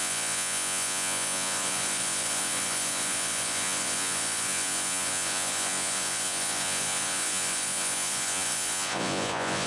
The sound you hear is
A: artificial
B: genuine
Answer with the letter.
A